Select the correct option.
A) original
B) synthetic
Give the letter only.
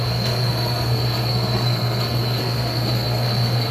B